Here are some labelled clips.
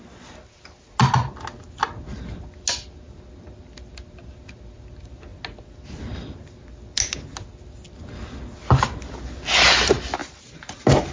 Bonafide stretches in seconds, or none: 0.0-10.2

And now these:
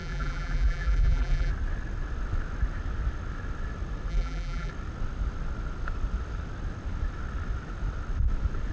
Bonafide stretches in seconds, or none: 1.5-4.1; 4.7-8.7

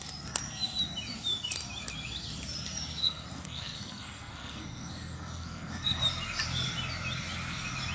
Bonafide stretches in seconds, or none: 0.0-3.0; 6.0-7.9

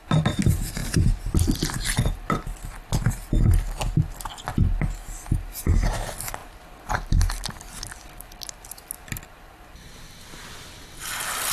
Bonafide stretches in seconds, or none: 0.0-11.5

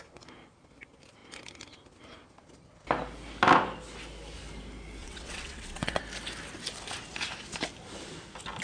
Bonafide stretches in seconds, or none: 0.0-5.0; 6.0-8.6

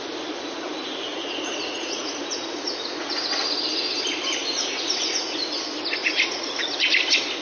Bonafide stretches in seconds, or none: 0.0-1.1; 3.1-4.4; 5.2-6.0; 6.9-7.4